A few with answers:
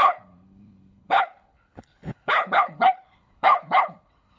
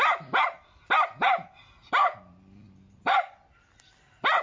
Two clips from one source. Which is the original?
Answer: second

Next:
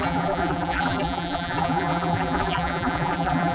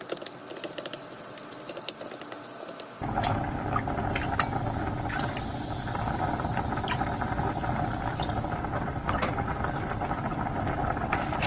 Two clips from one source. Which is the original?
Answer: second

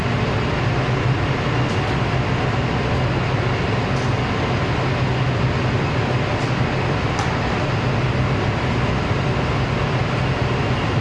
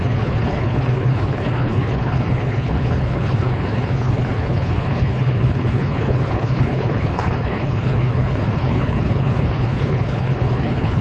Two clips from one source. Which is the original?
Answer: first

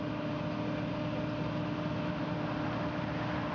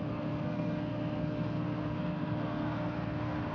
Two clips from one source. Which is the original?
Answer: first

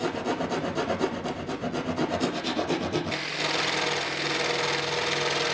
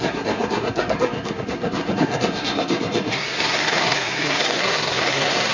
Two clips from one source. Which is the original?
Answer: first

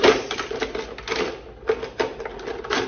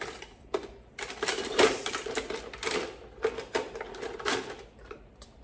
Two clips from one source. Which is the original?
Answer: first